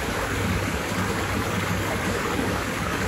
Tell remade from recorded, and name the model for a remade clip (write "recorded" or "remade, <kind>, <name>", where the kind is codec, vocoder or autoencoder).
remade, codec, DAC